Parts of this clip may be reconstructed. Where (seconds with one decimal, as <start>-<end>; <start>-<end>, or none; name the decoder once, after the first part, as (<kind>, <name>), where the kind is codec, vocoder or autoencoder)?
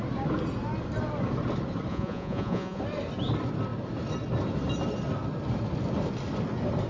1.9-2.8 (vocoder, Vocos)